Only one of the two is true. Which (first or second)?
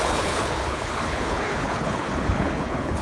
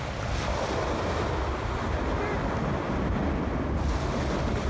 second